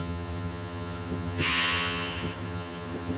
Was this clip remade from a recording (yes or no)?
yes